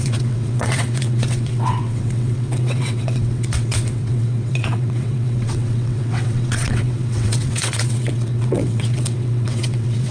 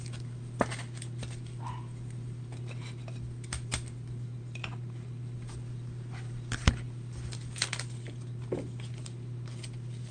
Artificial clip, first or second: first